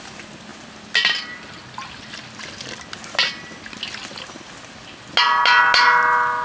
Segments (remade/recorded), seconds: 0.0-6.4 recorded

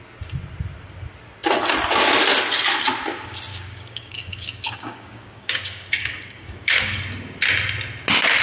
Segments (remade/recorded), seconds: 0.0-3.5 recorded; 3.5-7.0 remade; 7.0-8.4 recorded

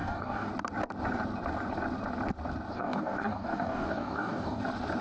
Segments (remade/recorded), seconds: 0.0-0.5 remade; 0.5-2.7 recorded; 2.7-4.6 remade; 4.6-5.0 recorded

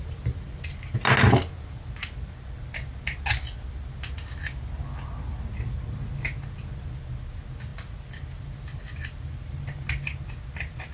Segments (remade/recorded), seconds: 0.0-10.9 recorded

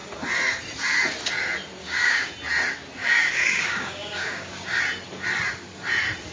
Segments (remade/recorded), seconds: 0.0-1.8 recorded; 1.8-2.3 remade; 2.3-3.0 recorded; 3.0-4.8 remade; 4.8-6.3 recorded

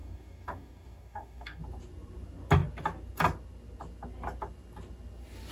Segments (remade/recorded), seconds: 0.0-1.6 remade; 1.6-5.5 recorded

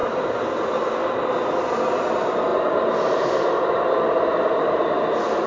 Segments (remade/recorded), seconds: 0.0-5.5 recorded